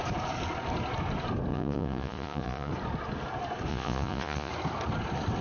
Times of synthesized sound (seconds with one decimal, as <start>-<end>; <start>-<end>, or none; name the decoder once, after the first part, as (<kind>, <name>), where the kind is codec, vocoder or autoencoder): 1.5-2.7 (vocoder, Vocos); 3.7-4.5